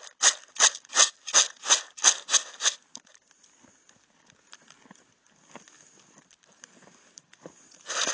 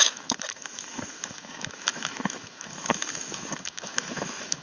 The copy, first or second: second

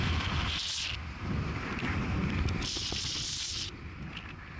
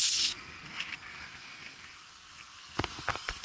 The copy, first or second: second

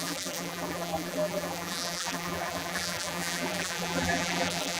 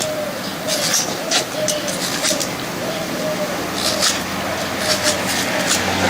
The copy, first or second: first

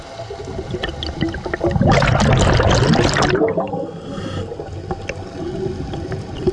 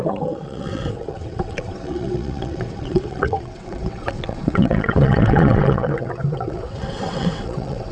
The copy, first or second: second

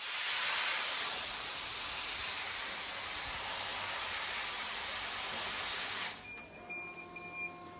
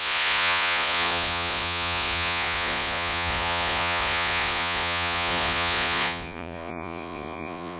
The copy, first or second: second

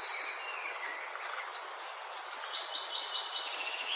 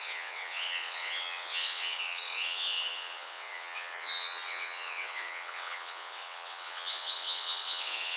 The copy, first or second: second